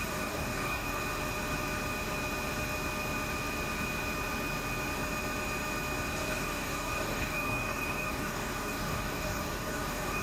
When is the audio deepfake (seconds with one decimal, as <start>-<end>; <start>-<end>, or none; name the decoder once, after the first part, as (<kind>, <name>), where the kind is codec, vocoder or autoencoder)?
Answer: 0.0-1.0 (codec, DAC); 6.1-10.2

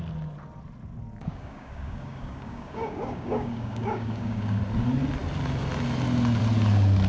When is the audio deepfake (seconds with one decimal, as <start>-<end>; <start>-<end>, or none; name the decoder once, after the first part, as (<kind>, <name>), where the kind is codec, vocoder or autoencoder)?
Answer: 1.2-4.6 (codec, DAC)

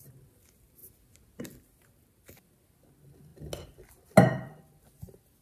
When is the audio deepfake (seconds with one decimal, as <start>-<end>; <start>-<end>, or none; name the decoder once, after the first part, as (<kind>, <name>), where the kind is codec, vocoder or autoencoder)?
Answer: none

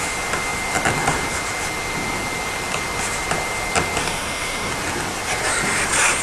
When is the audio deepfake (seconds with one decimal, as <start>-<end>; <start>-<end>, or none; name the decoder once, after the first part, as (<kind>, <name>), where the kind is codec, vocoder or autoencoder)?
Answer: 4.0-4.7 (codec, DAC)